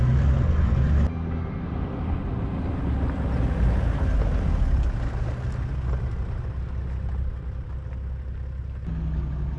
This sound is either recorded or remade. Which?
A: recorded